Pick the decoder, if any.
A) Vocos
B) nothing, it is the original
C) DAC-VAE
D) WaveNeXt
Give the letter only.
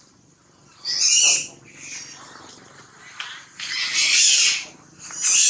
B